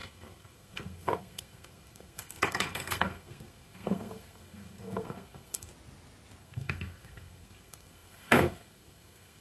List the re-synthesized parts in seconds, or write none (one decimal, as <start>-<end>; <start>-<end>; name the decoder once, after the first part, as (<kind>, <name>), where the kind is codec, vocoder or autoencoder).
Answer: 0.0-5.7 (codec, SNAC); 6.4-9.4